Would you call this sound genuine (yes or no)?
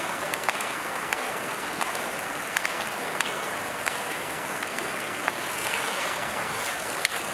no